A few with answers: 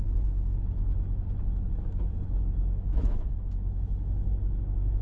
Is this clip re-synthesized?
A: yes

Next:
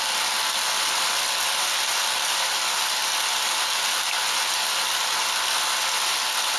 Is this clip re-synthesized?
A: no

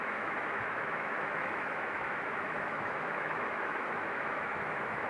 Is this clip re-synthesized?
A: yes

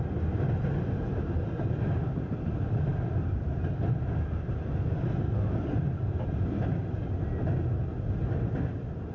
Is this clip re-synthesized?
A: no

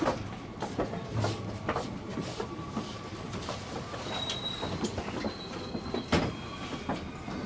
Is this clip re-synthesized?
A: no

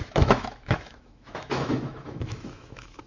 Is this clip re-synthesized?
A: yes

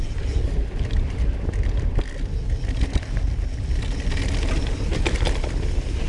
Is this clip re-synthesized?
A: no